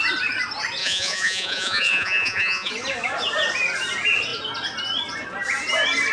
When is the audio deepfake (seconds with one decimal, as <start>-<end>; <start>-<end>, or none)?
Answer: 0.8-2.7